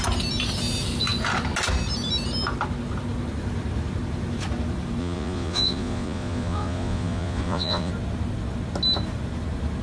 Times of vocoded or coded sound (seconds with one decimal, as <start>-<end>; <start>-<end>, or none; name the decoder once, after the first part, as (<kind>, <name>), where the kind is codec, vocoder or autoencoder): 5.0-7.9 (vocoder, Vocos)